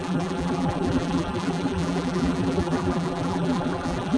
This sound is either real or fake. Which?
fake